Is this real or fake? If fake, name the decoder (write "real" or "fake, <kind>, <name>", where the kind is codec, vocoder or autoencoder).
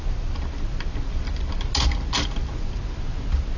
real